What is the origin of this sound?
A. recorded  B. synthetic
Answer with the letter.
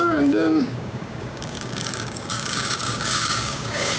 B